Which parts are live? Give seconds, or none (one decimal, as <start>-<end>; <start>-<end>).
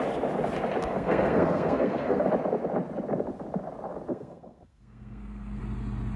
0.0-0.8; 2.3-4.1; 5.6-6.2